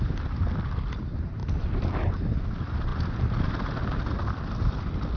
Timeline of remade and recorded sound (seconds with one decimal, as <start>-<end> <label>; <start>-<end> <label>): 0.0-5.2 recorded